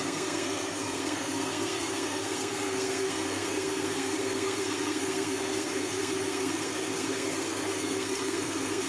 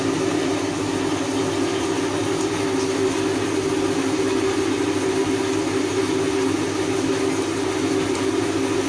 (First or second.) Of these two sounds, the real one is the second